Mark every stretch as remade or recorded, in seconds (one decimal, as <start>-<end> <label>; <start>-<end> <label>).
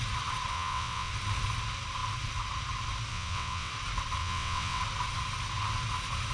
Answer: 0.0-0.5 recorded; 0.5-1.1 remade; 1.1-3.1 recorded; 3.1-3.7 remade; 3.7-4.2 recorded; 4.2-4.8 remade; 4.8-6.3 recorded